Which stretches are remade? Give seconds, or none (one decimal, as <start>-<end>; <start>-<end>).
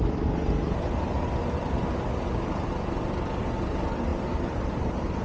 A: 1.4-2.0; 4.1-5.2